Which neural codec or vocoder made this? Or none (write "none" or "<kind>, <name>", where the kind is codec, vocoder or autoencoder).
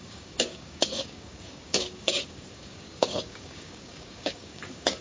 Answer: codec, DAC